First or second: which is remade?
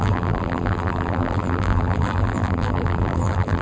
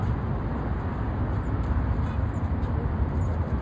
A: first